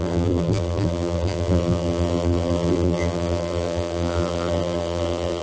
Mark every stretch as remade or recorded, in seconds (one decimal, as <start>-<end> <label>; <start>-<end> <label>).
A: 0.0-5.4 remade